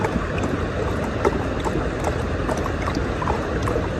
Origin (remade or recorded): recorded